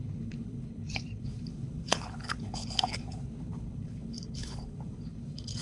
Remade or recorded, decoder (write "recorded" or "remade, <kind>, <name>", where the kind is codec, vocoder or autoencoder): remade, codec, HILCodec